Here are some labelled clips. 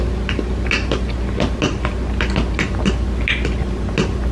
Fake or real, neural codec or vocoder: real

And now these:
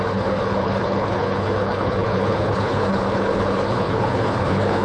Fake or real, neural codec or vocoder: fake, codec, HILCodec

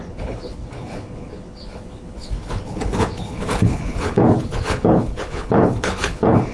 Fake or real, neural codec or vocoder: fake, codec, HILCodec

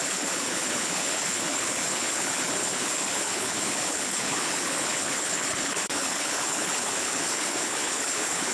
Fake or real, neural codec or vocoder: fake, codec, HILCodec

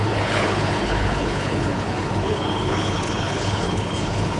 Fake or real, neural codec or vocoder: fake, codec, HILCodec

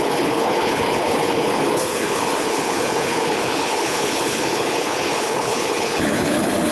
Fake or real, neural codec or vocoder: fake, codec, HILCodec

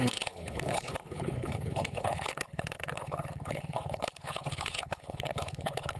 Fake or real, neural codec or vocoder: fake, codec, HILCodec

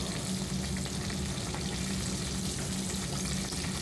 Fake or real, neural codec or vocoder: real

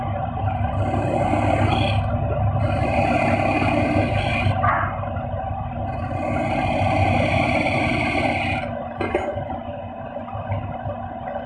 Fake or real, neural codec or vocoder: real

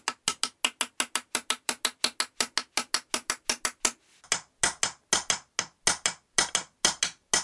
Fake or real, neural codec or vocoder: real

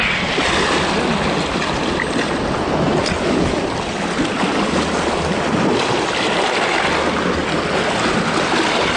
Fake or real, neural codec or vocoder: real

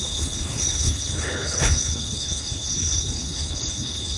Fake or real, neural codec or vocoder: fake, codec, HILCodec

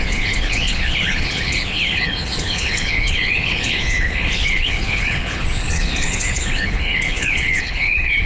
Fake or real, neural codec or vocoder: fake, codec, HILCodec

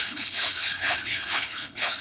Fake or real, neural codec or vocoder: fake, codec, HILCodec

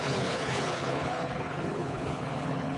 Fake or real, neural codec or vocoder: fake, codec, HILCodec